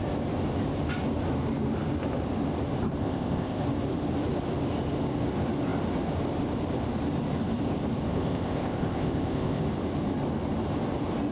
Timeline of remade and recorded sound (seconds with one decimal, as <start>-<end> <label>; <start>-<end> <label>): 0.0-3.0 recorded; 3.0-3.6 remade; 3.6-8.1 recorded; 8.1-9.6 remade; 9.6-11.3 recorded